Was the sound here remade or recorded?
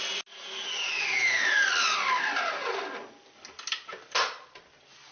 recorded